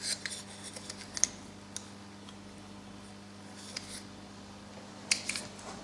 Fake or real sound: real